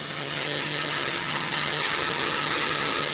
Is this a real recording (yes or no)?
no